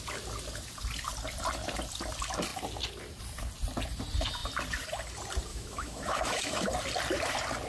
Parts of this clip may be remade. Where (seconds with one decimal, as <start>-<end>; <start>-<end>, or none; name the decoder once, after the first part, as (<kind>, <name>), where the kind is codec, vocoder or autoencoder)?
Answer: 5.5-6.7 (autoencoder, DAC-VAE)